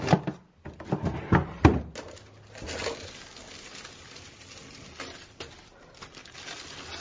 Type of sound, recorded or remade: recorded